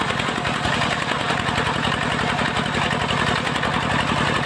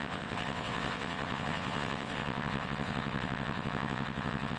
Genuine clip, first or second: first